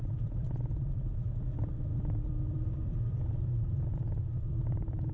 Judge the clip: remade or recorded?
remade